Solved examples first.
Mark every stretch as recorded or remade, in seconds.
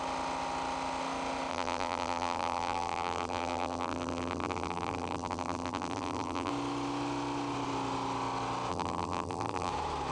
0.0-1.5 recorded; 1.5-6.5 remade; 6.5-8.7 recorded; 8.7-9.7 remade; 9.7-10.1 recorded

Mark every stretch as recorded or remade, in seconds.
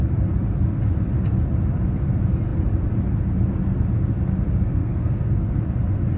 0.0-4.8 recorded; 4.8-5.5 remade; 5.5-6.2 recorded